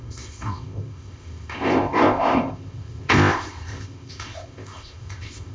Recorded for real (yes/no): no